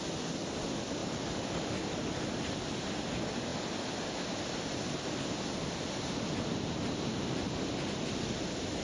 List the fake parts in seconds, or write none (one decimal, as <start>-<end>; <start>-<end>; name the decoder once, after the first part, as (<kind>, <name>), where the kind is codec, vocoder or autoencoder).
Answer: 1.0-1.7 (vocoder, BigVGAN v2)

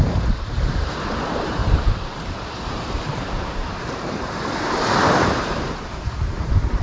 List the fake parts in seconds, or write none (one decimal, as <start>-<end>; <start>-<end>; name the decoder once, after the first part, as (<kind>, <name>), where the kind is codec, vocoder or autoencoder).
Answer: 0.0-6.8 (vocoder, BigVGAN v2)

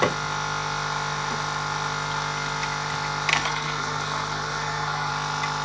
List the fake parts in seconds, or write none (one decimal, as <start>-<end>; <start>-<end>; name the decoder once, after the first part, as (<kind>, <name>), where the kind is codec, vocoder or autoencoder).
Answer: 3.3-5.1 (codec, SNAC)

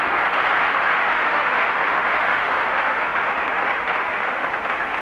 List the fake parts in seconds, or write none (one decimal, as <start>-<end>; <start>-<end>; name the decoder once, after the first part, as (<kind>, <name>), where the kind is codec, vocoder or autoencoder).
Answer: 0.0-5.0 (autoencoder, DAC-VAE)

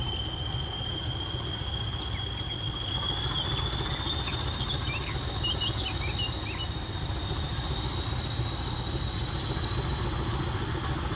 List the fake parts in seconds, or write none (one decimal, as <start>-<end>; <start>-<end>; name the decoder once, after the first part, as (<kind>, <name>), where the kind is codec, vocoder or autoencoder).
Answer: none

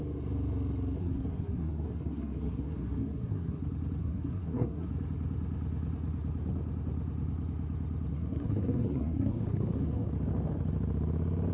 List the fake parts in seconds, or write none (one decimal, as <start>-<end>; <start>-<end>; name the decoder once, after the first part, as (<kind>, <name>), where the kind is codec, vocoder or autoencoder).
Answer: 1.0-3.6 (codec, SNAC); 4.0-4.9; 8.1-10.1

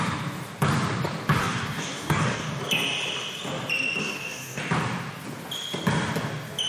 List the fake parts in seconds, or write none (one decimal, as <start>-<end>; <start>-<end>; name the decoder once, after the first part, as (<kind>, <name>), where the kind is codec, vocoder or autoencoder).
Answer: 1.4-2.6 (codec, DAC); 4.0-4.6

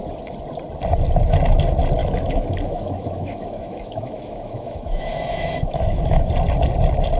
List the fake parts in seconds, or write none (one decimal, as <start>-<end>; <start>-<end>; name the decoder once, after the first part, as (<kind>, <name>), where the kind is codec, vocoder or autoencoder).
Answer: 2.0-6.3 (autoencoder, DAC-VAE)